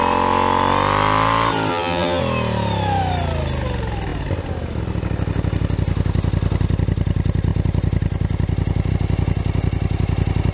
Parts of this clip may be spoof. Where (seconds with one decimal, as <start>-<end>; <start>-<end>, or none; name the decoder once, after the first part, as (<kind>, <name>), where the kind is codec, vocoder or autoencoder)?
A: 1.7-2.2 (vocoder, BigVGAN v2)